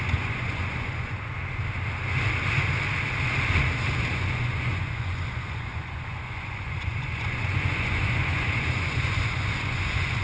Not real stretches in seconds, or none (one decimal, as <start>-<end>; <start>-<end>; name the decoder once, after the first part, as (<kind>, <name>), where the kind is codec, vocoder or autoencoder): 0.0-1.4 (vocoder, Vocos); 4.1-10.2